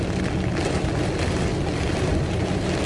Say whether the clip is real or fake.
real